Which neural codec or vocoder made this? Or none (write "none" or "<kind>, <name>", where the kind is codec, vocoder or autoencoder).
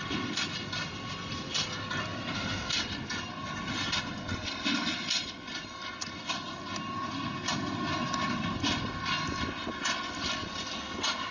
none